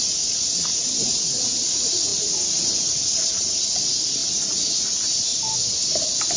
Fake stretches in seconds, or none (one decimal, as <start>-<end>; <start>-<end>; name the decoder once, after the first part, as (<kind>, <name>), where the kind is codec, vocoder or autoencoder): 0.0-5.3 (vocoder, Vocos)